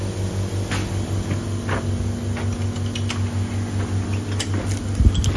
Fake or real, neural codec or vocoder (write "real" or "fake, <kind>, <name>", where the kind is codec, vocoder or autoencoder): real